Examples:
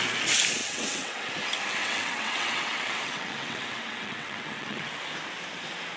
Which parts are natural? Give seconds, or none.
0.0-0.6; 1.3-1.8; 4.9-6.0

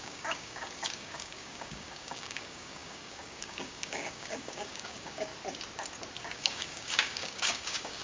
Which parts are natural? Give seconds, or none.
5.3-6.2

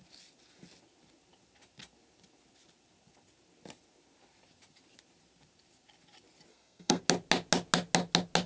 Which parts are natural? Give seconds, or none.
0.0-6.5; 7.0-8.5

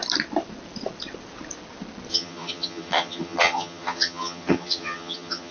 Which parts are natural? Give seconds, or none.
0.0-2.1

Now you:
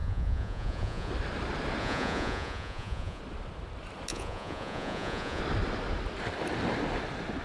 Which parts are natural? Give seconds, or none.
1.1-1.8; 3.2-4.1; 5.4-7.4

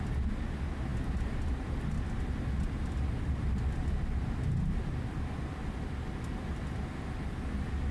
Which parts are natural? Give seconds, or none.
0.0-7.9

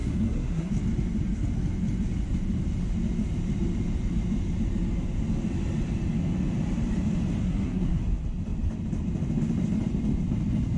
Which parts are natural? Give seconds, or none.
0.7-7.4; 8.0-10.8

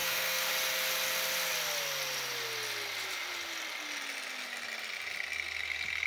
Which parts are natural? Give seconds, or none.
0.5-6.1